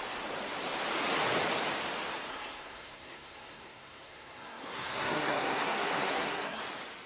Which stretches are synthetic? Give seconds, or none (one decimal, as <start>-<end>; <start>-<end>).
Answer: 2.3-6.6